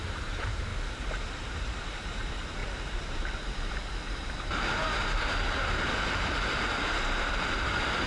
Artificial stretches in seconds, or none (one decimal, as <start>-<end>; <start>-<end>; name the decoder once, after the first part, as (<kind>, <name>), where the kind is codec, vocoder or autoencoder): 0.0-0.7 (vocoder, BigVGAN v2); 1.4-8.1